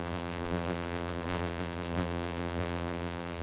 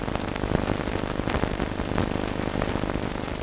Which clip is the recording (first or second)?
second